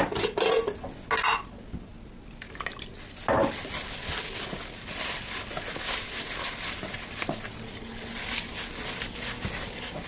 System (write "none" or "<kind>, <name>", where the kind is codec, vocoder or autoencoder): none